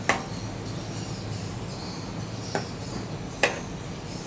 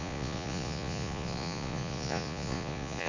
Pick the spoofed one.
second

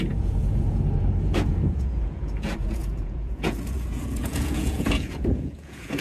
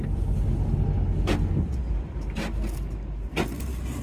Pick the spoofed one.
first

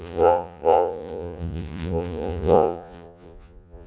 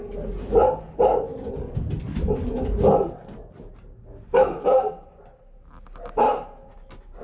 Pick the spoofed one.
first